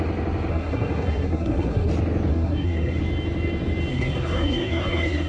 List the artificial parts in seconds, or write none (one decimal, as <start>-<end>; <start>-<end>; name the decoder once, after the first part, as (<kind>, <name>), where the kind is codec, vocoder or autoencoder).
0.5-1.9 (codec, SNAC); 2.3-3.0; 3.9-5.3